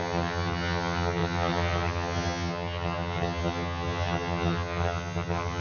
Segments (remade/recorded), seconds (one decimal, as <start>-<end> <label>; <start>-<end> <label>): 0.0-5.6 remade